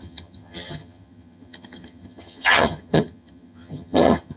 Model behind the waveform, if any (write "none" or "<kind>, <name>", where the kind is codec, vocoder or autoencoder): vocoder, HiFi-GAN